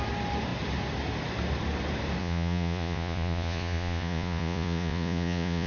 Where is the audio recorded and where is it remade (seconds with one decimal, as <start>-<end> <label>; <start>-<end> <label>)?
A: 0.0-2.2 recorded; 2.2-5.7 remade